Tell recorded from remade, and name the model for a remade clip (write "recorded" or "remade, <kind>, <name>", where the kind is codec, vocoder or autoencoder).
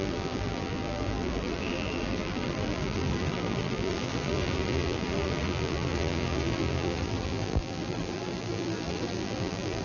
remade, vocoder, BigVGAN v2